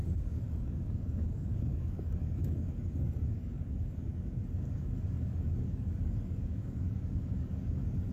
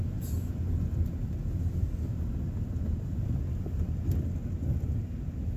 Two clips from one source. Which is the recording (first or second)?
second